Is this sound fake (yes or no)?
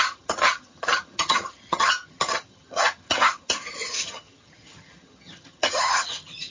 yes